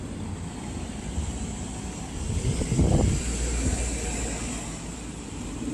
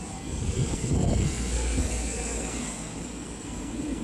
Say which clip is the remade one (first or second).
second